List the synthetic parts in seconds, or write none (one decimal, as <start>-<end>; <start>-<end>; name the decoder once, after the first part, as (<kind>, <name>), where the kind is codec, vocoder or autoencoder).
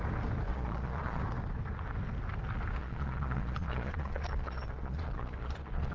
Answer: 0.5-1.2 (vocoder, Vocos); 2.8-5.9